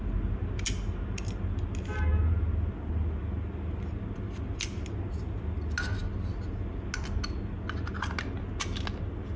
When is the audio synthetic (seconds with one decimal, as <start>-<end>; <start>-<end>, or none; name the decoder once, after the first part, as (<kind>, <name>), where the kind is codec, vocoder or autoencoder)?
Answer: none